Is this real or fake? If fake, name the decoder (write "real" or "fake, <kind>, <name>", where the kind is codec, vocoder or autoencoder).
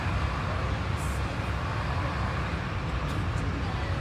real